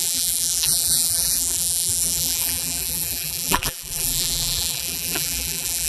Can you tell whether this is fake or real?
fake